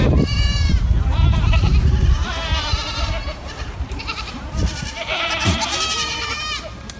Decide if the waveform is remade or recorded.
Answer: remade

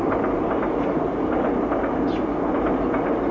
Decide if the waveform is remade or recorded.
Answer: recorded